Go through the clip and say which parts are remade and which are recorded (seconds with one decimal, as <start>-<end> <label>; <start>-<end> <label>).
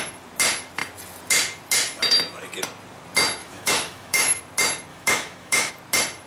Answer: 0.0-3.4 recorded; 3.4-4.4 remade; 4.4-4.9 recorded; 4.9-5.7 remade; 5.7-6.3 recorded